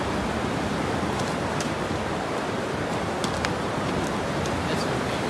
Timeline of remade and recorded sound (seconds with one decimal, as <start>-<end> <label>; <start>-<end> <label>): 0.0-5.3 recorded